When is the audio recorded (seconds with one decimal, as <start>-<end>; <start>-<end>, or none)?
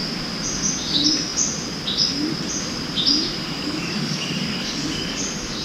0.0-3.4